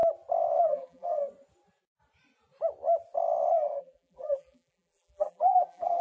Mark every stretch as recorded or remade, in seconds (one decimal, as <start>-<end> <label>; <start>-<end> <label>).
0.0-0.6 recorded; 0.6-1.2 remade; 1.2-3.8 recorded; 3.8-6.0 remade